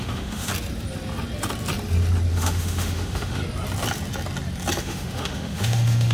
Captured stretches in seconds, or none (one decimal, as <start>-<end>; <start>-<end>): 0.5-2.3; 3.4-4.8